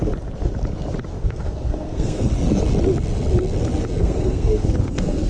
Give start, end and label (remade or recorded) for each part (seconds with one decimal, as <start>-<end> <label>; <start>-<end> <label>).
0.0-1.1 recorded; 1.1-2.3 remade; 2.3-4.0 recorded; 4.0-5.3 remade